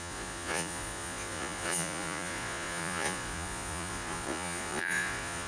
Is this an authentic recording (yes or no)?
no